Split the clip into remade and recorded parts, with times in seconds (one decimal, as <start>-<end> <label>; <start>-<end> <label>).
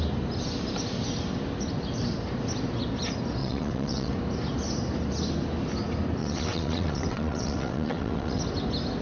0.0-3.4 recorded; 3.4-4.1 remade; 4.1-6.2 recorded; 6.2-8.4 remade; 8.4-9.0 recorded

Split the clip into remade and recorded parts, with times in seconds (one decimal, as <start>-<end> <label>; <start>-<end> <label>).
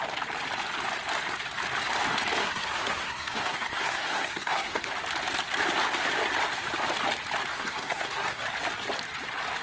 0.0-2.4 recorded; 2.4-4.9 remade; 4.9-7.5 recorded; 7.5-8.4 remade; 8.4-9.6 recorded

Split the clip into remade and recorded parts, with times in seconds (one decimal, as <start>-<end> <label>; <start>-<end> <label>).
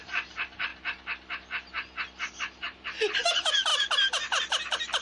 0.0-0.7 remade; 0.7-2.3 recorded; 2.3-5.0 remade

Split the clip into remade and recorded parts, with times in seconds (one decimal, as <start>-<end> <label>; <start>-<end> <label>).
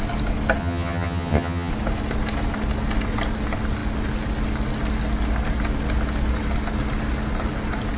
0.0-0.6 recorded; 0.6-1.7 remade; 1.7-8.0 recorded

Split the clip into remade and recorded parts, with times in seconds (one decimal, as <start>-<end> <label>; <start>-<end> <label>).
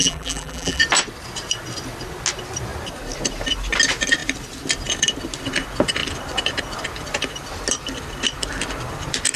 0.0-0.8 remade; 0.8-9.4 recorded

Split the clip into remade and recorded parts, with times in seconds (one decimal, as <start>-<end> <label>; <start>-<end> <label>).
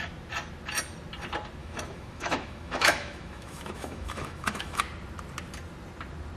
0.0-1.6 recorded; 1.6-4.8 remade; 4.8-6.4 recorded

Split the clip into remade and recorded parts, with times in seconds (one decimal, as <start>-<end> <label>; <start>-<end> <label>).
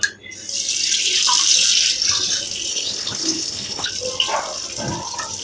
0.0-2.7 recorded; 2.7-3.9 remade; 3.9-5.4 recorded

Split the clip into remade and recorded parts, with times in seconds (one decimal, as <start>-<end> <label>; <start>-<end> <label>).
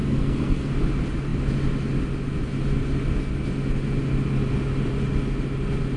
0.0-0.7 remade; 0.7-6.0 recorded